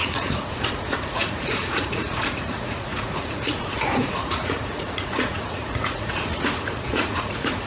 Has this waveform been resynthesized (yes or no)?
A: yes